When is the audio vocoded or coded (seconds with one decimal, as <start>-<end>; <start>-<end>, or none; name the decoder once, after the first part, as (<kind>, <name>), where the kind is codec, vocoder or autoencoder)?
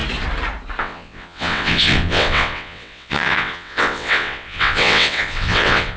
0.8-6.0 (vocoder, WaveNeXt)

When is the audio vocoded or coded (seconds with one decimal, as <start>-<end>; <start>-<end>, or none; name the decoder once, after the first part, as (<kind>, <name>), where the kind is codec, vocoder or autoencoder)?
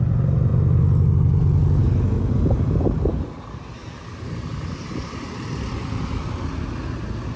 none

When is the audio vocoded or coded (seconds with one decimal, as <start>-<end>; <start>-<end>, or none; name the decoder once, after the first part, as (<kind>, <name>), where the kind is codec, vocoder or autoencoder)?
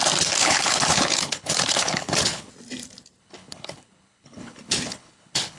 0.4-2.5 (codec, HILCodec); 3.2-5.6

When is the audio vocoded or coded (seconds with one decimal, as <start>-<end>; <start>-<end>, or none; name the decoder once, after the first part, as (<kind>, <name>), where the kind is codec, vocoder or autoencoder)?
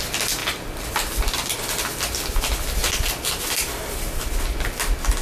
none